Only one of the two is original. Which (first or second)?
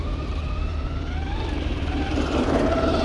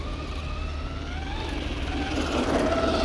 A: second